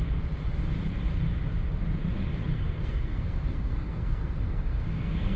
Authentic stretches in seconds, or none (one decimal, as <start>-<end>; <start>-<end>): 0.0-2.4